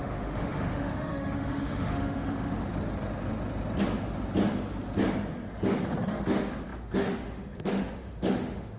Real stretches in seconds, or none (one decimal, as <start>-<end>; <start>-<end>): 2.6-6.0